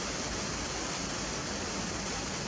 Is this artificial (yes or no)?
no